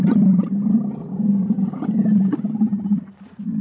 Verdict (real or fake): fake